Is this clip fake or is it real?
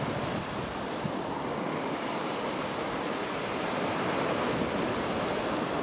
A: real